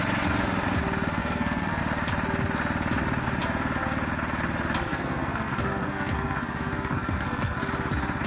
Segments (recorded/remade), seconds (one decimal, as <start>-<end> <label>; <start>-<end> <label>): 0.0-1.2 recorded; 1.2-1.8 remade; 1.8-4.9 recorded; 4.9-7.7 remade; 7.7-8.3 recorded